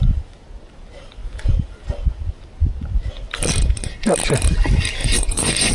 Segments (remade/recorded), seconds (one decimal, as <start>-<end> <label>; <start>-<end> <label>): 0.0-5.0 recorded; 5.0-5.7 remade